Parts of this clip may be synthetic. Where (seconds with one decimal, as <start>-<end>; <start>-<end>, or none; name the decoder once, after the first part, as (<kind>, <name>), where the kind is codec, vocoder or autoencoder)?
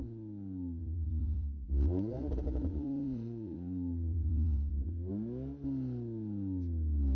0.8-5.1 (vocoder, Vocos)